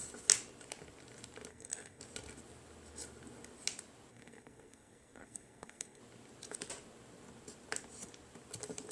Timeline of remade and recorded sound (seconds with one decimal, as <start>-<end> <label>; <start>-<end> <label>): 0.0-1.5 recorded; 1.5-2.0 remade; 2.0-4.1 recorded; 4.1-6.0 remade; 6.0-8.9 recorded